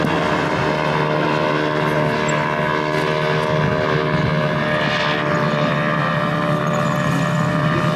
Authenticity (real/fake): real